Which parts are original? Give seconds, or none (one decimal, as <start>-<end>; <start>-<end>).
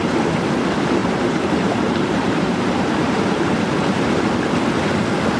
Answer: 0.0-1.0; 4.2-5.4